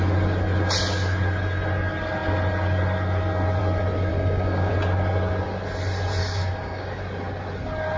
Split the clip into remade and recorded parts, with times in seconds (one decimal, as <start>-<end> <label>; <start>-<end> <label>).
0.0-4.1 recorded; 4.1-4.7 remade; 4.7-6.2 recorded; 6.2-7.0 remade; 7.0-8.0 recorded